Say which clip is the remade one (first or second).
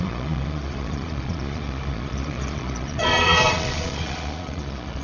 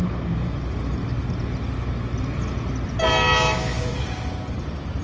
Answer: first